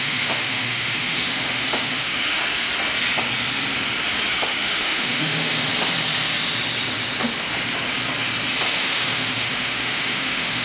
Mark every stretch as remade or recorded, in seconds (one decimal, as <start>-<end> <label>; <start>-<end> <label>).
0.0-2.4 remade; 2.4-4.3 recorded; 4.3-5.7 remade; 5.7-8.7 recorded; 8.7-10.6 remade